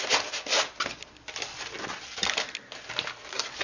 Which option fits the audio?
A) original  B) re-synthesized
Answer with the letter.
A